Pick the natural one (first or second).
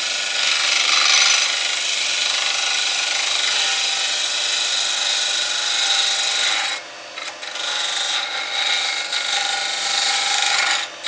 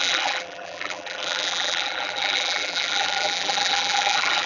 first